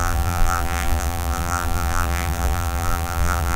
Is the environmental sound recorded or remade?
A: remade